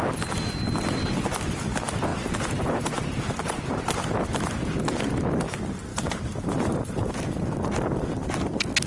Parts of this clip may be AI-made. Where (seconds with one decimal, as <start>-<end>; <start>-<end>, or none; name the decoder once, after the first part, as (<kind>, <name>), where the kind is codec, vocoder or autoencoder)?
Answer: 2.1-4.1 (vocoder, BigVGAN v2); 5.9-7.1